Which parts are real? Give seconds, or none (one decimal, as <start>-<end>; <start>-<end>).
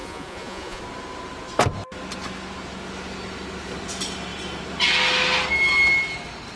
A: 0.8-6.6